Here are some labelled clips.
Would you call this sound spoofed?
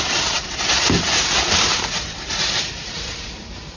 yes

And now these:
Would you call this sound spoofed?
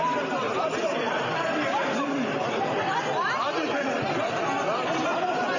no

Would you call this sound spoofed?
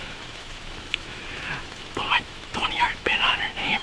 yes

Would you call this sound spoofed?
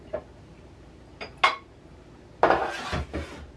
no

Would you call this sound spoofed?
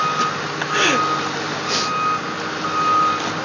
no